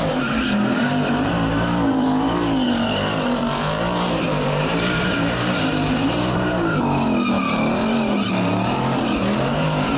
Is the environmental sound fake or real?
fake